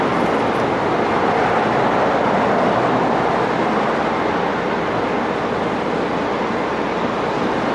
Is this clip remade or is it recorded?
recorded